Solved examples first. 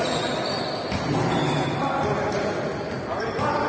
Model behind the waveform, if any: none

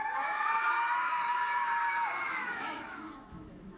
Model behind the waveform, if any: autoencoder, DAC-VAE